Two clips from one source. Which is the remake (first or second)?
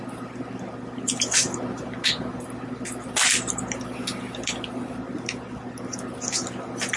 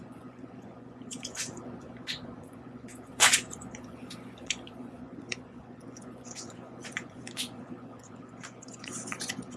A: second